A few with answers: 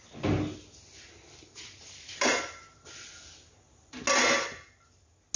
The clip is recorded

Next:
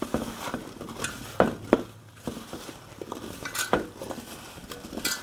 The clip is recorded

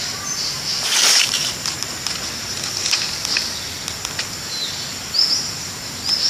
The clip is recorded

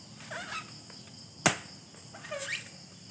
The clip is recorded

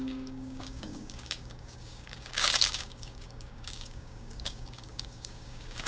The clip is remade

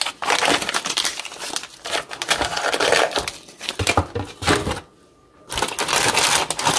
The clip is recorded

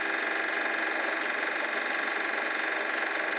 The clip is recorded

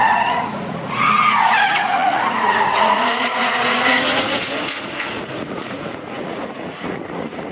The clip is remade